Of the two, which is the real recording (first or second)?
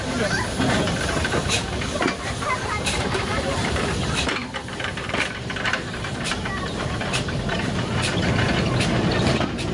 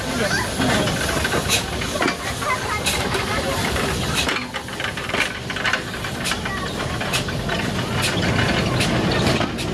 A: second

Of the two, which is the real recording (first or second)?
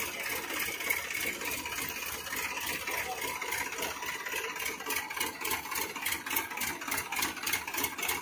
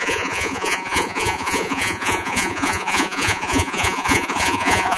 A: first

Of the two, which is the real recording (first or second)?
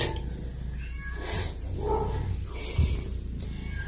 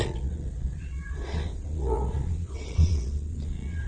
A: first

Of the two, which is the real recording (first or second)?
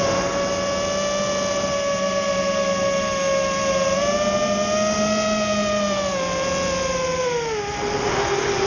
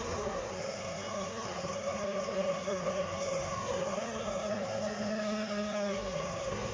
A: first